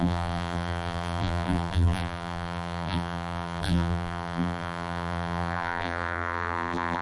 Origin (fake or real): fake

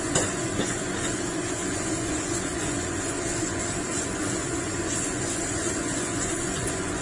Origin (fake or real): fake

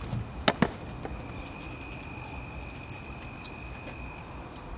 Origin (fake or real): real